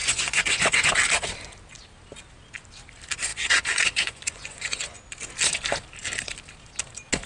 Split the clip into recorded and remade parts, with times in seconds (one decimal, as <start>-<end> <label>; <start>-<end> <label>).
0.0-0.9 remade; 0.9-3.3 recorded; 3.3-5.0 remade; 5.0-7.3 recorded